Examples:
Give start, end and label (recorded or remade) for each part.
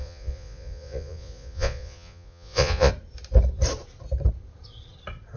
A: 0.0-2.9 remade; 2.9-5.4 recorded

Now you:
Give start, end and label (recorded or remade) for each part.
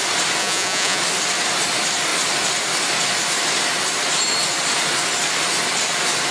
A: 0.0-0.4 recorded; 0.4-1.0 remade; 1.0-6.3 recorded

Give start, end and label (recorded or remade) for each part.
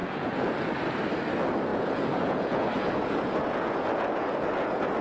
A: 0.0-0.7 remade; 0.7-1.7 recorded; 1.7-5.0 remade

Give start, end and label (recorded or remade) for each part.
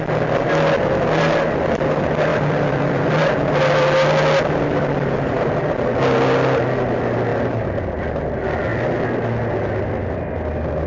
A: 0.0-2.3 recorded; 2.3-3.5 remade; 3.5-7.3 recorded; 7.3-7.8 remade; 7.8-10.9 recorded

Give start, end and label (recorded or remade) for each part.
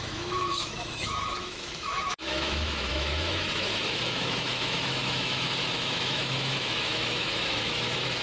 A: 0.0-8.2 remade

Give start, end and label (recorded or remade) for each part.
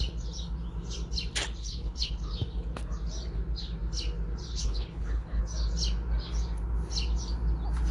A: 0.0-1.6 recorded; 1.6-2.3 remade; 2.3-4.5 recorded; 4.5-5.4 remade; 5.4-7.9 recorded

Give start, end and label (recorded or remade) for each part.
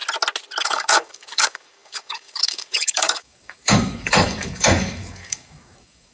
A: 0.0-0.6 recorded; 0.6-6.1 remade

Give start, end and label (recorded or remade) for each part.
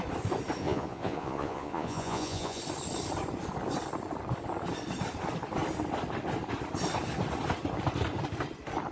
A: 0.0-0.6 recorded; 0.6-2.6 remade; 2.6-8.9 recorded